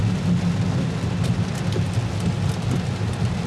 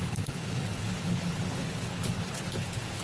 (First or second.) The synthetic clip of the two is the second